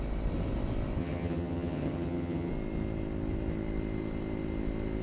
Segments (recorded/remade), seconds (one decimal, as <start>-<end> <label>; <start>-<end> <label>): 0.0-1.0 recorded; 1.0-2.5 remade; 2.5-5.0 recorded